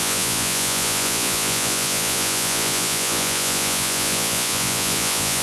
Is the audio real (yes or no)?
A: no